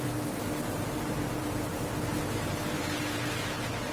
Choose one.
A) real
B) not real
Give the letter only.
A